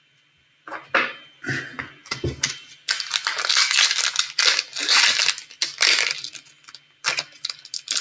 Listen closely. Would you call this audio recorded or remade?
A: recorded